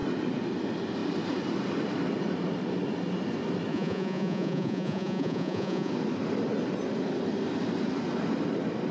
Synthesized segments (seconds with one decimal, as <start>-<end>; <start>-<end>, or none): 3.7-5.9